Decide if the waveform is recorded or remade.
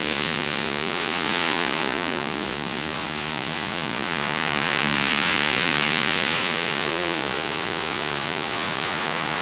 remade